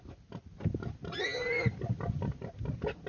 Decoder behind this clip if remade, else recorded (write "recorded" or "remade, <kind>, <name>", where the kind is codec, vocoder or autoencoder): recorded